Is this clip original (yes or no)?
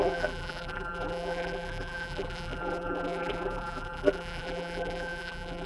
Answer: no